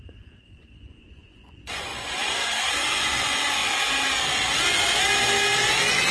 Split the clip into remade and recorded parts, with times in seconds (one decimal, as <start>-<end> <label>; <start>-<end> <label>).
0.0-3.6 remade; 3.6-6.1 recorded